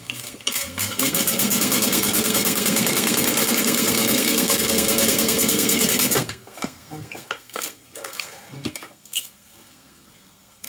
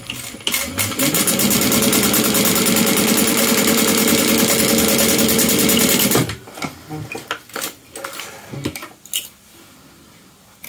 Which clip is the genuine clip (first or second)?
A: second